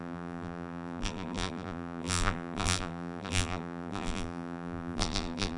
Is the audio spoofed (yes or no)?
yes